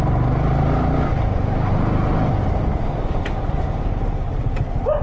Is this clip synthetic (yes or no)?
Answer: no